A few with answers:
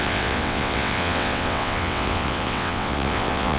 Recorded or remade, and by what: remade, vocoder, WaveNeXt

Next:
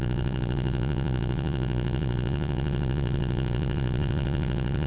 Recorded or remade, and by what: remade, vocoder, WaveNeXt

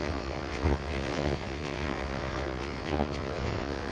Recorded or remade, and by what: remade, vocoder, WaveNeXt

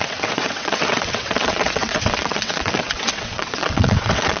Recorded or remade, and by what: remade, vocoder, WaveNeXt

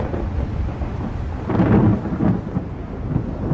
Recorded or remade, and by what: recorded